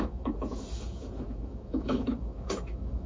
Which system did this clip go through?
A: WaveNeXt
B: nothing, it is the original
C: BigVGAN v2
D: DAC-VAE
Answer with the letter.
D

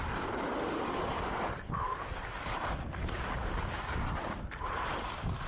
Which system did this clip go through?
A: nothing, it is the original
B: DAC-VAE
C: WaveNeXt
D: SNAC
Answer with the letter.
A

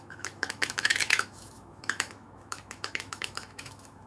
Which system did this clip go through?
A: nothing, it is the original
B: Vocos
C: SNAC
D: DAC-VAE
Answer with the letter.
D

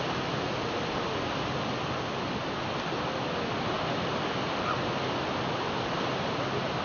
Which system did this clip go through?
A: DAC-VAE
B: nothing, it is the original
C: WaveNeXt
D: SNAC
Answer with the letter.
B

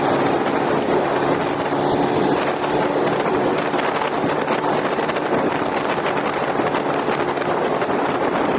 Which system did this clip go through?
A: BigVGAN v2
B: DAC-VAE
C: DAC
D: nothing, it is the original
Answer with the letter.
D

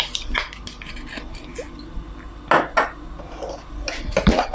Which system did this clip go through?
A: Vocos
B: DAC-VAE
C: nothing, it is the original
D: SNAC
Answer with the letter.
C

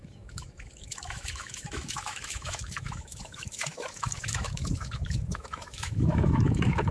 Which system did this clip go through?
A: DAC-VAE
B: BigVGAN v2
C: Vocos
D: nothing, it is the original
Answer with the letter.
A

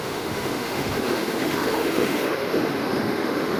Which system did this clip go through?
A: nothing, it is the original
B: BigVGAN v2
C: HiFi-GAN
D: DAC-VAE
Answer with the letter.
D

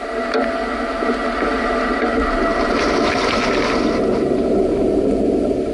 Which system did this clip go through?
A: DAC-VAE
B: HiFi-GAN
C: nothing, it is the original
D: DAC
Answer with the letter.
C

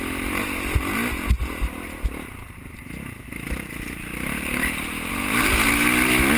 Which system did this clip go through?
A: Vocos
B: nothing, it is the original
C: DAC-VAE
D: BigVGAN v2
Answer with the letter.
B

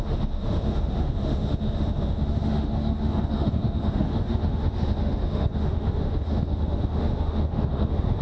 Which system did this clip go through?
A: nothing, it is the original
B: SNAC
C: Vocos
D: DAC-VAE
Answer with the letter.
D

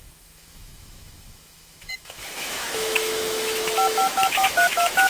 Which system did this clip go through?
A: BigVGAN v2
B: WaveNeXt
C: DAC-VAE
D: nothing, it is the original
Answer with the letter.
C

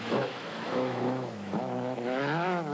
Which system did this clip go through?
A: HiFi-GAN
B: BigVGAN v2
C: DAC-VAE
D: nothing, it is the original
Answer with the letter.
C